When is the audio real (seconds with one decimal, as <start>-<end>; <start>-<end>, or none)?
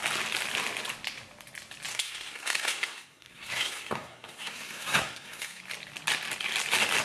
0.0-1.9; 5.6-7.0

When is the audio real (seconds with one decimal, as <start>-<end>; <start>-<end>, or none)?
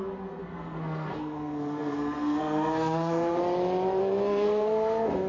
3.4-4.0